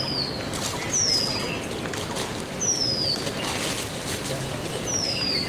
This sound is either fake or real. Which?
real